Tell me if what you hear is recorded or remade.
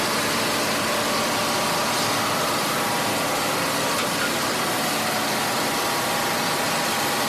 recorded